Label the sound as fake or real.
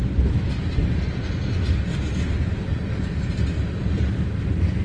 real